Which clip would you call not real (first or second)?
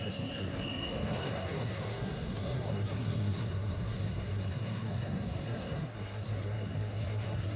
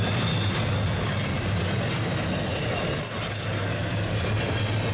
first